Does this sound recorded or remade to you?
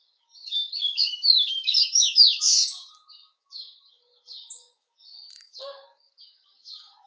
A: remade